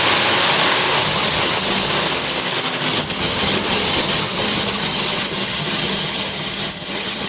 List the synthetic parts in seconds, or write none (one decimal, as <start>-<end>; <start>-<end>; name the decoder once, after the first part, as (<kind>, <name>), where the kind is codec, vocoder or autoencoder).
1.0-1.9 (vocoder, HiFi-GAN); 2.9-7.3